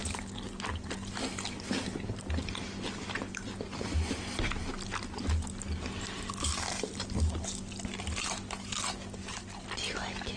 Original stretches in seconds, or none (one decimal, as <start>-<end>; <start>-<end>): 0.0-10.4